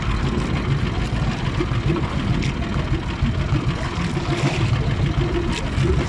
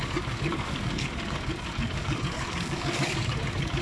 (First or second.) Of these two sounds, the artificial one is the second